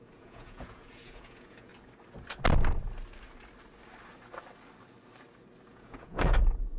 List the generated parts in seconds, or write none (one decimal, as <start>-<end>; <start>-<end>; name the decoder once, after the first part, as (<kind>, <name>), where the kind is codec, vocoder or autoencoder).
0.0-1.7 (vocoder, Vocos); 5.7-6.8